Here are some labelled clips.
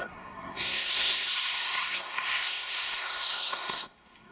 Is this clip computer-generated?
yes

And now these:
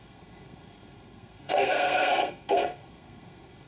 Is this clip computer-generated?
yes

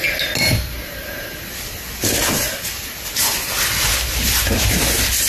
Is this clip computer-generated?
no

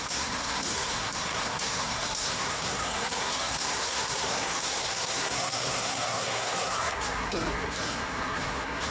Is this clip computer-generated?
yes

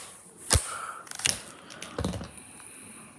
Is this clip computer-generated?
no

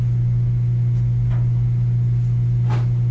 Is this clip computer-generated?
no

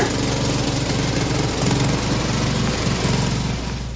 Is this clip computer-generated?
no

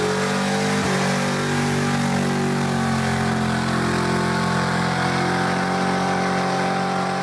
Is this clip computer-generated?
no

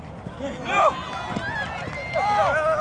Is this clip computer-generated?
no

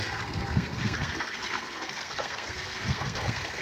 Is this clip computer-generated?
yes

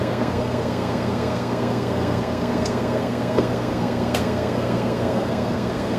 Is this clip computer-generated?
yes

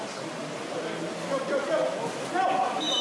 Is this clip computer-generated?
no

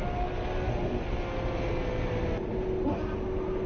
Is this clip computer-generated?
no